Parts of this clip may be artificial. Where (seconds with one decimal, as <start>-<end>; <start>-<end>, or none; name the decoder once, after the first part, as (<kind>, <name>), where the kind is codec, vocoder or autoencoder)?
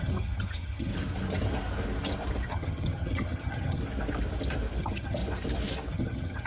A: 0.0-0.9 (vocoder, HiFi-GAN); 2.5-3.8; 4.8-5.2; 5.9-6.5